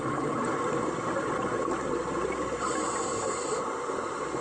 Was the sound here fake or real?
real